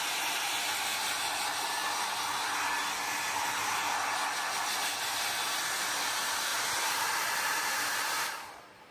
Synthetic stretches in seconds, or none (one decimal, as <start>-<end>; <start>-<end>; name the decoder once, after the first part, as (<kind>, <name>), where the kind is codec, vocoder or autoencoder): 6.5-7.6 (vocoder, BigVGAN v2)